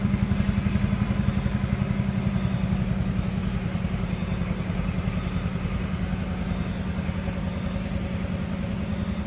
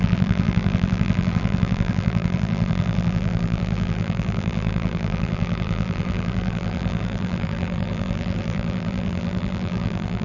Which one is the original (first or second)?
first